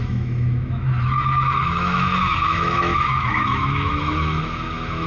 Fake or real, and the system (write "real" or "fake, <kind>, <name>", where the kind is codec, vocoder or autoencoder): fake, autoencoder, DAC-VAE